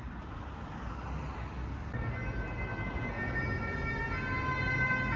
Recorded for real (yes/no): yes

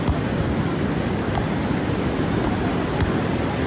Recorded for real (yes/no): yes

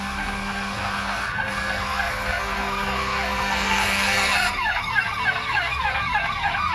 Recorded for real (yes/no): no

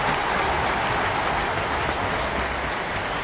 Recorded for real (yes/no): yes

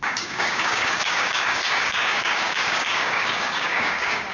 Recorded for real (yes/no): no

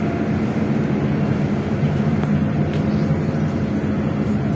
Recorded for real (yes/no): yes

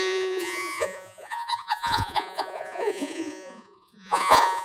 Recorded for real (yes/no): no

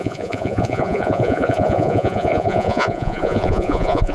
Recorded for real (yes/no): no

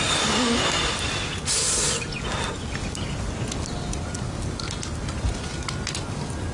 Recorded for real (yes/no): yes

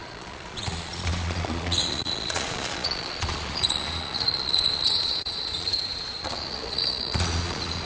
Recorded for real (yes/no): no